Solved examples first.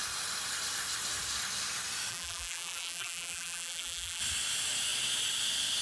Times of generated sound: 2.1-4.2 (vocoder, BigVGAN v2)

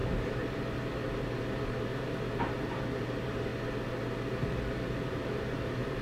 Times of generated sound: 0.0-3.5 (vocoder, BigVGAN v2); 5.1-6.0

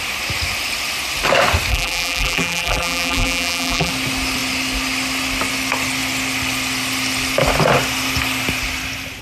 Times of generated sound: 1.7-3.9 (vocoder, BigVGAN v2)